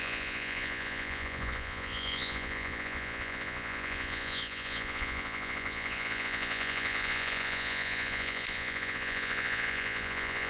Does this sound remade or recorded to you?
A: remade